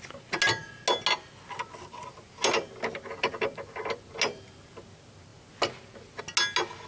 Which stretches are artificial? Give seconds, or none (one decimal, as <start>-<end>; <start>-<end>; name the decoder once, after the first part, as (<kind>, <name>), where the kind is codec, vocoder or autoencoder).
none

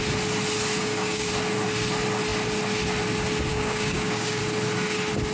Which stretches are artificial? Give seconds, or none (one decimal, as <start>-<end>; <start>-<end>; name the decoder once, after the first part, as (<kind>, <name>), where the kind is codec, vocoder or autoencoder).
0.8-1.3 (codec, DAC); 3.5-4.4

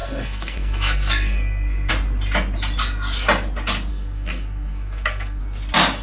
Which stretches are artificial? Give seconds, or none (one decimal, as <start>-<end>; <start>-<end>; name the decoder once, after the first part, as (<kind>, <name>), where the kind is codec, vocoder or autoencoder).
0.0-1.9 (codec, SNAC); 3.9-5.4